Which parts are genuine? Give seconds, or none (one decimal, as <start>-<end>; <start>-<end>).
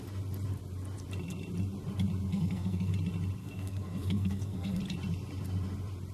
0.0-2.3; 2.9-3.4; 4.8-6.1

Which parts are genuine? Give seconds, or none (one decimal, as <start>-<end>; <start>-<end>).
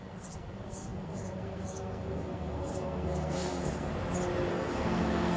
3.9-4.5